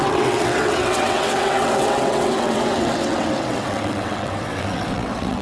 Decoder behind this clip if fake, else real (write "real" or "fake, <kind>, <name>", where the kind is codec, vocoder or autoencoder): fake, vocoder, WaveNeXt